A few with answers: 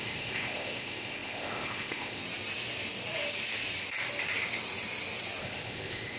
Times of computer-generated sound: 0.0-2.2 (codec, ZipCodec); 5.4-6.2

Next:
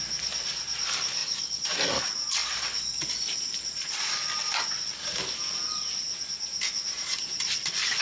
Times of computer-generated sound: none

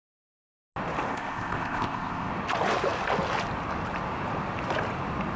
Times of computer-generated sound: 1.1-2.3 (codec, ZipCodec)